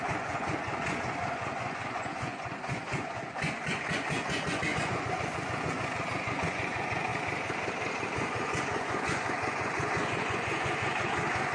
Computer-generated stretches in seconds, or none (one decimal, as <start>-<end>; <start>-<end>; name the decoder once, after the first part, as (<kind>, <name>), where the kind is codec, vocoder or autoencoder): 0.0-7.1 (vocoder, Vocos); 8.0-11.5